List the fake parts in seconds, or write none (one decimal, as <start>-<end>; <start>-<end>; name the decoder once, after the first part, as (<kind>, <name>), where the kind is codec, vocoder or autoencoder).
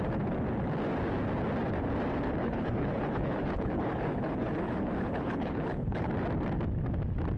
2.4-6.1 (codec, HILCodec)